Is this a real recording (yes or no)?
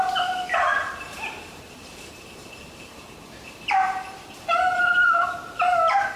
no